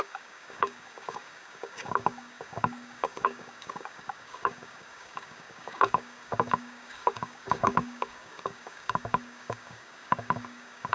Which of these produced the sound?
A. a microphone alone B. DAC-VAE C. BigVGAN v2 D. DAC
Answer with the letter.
D